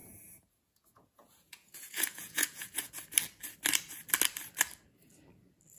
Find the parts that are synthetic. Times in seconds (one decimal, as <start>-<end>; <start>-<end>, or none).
0.0-2.9